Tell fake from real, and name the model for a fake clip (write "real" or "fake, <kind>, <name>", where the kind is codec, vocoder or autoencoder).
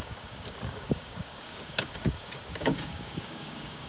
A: fake, codec, DAC